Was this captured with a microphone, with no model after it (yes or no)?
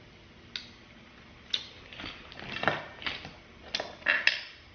yes